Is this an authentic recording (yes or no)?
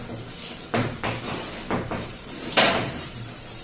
no